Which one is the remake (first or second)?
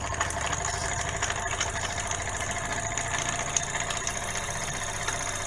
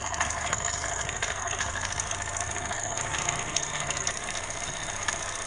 second